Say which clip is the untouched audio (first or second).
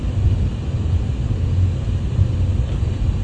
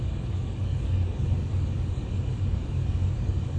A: first